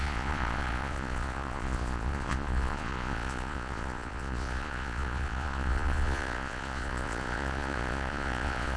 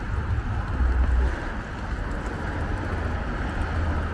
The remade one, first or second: first